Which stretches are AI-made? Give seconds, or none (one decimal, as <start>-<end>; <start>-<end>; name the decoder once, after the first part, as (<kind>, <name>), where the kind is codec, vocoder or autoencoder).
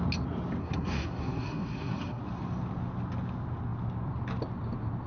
0.6-2.2 (codec, SNAC)